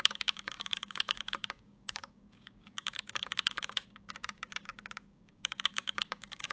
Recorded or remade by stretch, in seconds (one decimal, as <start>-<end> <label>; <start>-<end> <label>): 0.0-6.5 remade